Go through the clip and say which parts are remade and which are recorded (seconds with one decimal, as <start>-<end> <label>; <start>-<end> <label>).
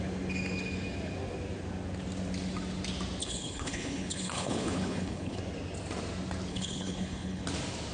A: 0.0-3.2 recorded; 3.2-5.4 remade; 5.4-6.5 recorded; 6.5-7.4 remade; 7.4-7.9 recorded